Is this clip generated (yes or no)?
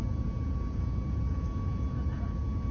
yes